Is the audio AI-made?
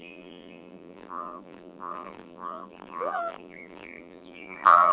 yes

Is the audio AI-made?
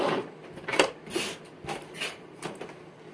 yes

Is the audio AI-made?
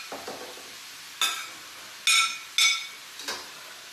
no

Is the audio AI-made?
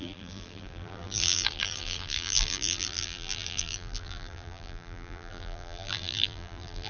yes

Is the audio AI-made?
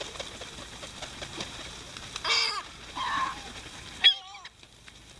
no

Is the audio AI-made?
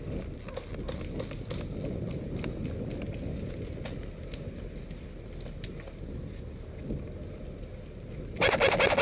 no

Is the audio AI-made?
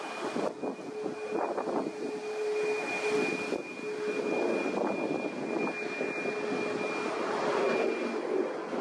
no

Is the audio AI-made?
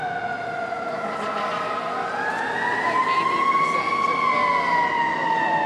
no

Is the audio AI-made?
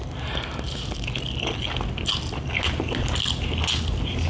no